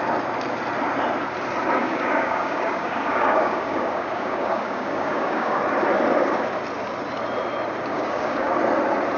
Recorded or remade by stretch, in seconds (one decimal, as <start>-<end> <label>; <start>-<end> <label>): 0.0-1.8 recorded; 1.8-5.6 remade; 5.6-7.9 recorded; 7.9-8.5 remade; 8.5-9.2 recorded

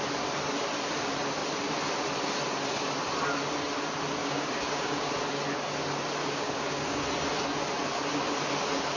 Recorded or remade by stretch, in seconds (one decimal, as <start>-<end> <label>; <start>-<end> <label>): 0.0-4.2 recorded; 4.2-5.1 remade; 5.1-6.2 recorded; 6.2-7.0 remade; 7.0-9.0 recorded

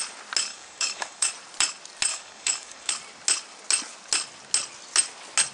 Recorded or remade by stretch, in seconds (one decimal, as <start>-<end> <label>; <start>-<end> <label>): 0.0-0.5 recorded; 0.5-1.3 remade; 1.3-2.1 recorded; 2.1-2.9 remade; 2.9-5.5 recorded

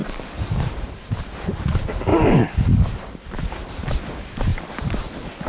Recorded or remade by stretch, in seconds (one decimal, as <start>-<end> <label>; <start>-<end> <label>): 0.0-0.6 remade; 0.6-2.1 recorded; 2.1-3.2 remade; 3.2-5.5 recorded

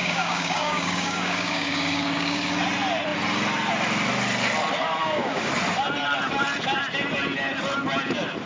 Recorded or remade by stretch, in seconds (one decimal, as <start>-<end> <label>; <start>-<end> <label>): 0.0-2.5 remade; 2.5-5.0 recorded; 5.0-5.5 remade; 5.5-8.5 recorded

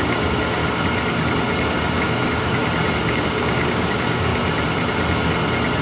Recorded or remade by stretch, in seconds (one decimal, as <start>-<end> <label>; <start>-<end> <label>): 0.0-0.6 remade; 0.6-1.9 recorded; 1.9-2.6 remade; 2.6-3.1 recorded; 3.1-4.3 remade; 4.3-5.8 recorded

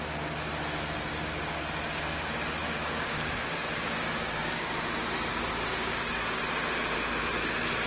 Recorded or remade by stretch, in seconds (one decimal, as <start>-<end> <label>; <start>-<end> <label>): 0.0-1.1 recorded; 1.1-1.7 remade; 1.7-2.6 recorded; 2.6-4.7 remade; 4.7-5.3 recorded; 5.3-6.4 remade; 6.4-7.9 recorded

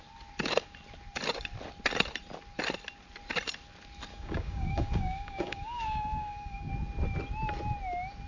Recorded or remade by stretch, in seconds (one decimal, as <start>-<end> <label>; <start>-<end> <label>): 0.0-4.1 recorded; 4.1-6.7 remade; 6.7-8.3 recorded